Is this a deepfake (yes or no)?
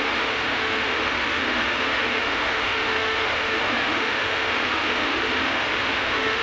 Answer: yes